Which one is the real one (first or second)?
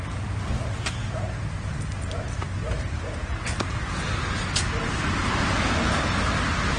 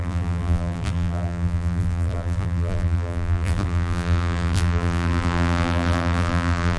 first